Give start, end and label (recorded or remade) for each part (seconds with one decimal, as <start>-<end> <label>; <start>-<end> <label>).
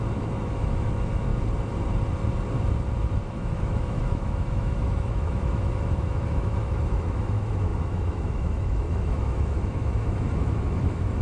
0.0-1.3 remade; 1.3-3.2 recorded; 3.2-11.2 remade